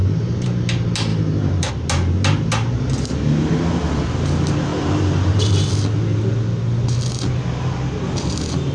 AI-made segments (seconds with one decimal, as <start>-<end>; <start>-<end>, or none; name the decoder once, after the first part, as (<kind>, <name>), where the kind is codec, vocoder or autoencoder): 0.0-0.6 (vocoder, BigVGAN v2); 1.1-1.7; 4.7-5.7